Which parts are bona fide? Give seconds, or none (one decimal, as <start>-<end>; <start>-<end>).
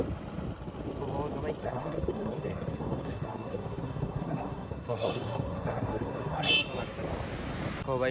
0.0-1.6; 6.5-8.1